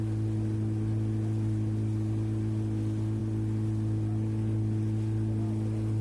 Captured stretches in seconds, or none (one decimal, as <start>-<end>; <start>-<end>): 0.0-6.0